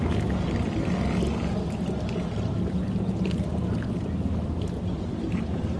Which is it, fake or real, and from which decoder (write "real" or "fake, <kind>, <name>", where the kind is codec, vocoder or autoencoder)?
real